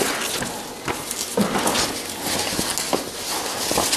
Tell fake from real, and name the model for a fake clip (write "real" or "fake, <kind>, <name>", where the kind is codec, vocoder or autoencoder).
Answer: real